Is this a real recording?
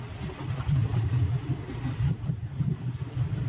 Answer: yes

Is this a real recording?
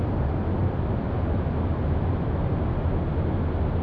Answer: yes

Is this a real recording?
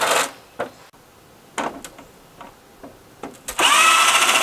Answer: yes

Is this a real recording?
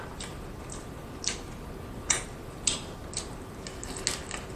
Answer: yes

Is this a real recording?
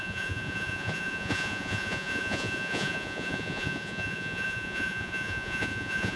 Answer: no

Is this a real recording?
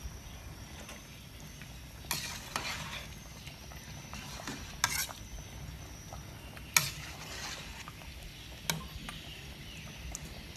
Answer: yes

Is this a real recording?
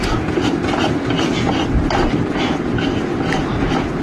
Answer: yes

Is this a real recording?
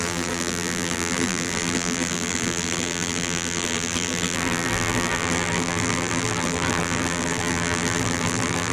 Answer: no